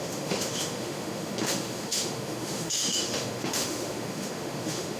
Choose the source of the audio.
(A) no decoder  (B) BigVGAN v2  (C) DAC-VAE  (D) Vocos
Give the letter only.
C